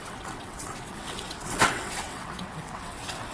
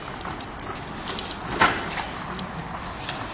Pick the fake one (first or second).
first